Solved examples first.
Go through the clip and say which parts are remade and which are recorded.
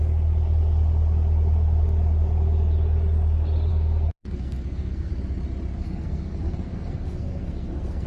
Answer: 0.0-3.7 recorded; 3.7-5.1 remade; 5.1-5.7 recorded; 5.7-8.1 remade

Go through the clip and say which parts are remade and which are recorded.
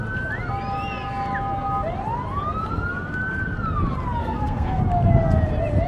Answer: 0.0-4.2 recorded; 4.2-4.8 remade; 4.8-5.9 recorded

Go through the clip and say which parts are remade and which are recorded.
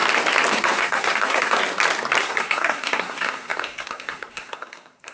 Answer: 0.0-0.5 recorded; 0.5-1.6 remade; 1.6-2.2 recorded; 2.2-5.1 remade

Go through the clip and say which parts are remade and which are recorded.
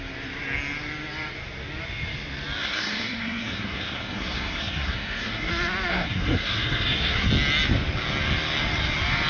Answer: 0.0-2.6 recorded; 2.6-5.5 remade; 5.5-5.9 recorded; 5.9-7.3 remade; 7.3-9.3 recorded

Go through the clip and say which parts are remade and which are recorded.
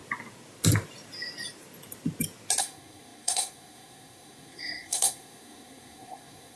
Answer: 0.0-2.6 recorded; 2.6-6.6 remade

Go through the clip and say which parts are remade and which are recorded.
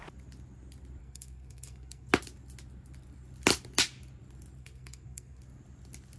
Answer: 0.0-1.0 recorded; 1.0-2.1 remade; 2.1-4.6 recorded; 4.6-5.4 remade; 5.4-6.2 recorded